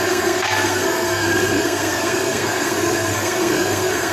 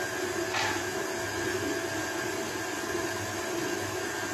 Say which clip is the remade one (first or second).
first